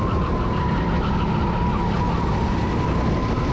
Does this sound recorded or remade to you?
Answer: recorded